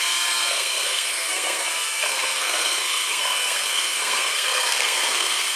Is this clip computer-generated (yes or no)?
yes